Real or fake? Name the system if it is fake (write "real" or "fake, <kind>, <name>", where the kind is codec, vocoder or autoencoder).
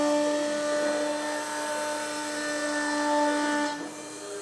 real